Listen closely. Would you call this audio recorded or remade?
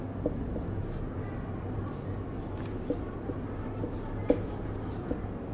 recorded